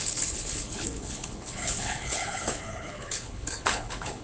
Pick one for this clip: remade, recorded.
remade